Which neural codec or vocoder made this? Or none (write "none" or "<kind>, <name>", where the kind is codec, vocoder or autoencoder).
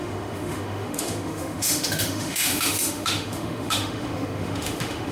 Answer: autoencoder, DAC-VAE